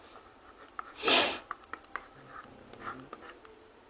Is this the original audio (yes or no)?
no